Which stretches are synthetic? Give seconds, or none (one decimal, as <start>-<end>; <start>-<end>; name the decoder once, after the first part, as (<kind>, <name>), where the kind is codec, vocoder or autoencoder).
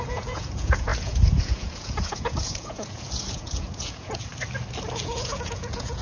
0.0-4.3 (vocoder, Vocos); 5.0-6.0